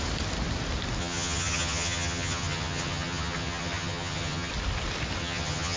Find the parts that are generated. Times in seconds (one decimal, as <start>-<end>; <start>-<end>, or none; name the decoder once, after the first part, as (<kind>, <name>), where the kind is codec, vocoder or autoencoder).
1.0-4.5 (vocoder, HiFi-GAN); 5.2-5.8